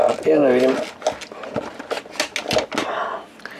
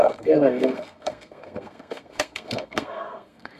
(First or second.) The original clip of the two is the first